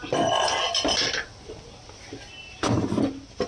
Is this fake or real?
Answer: real